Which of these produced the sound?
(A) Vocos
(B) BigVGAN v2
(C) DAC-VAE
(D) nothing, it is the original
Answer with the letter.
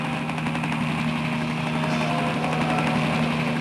D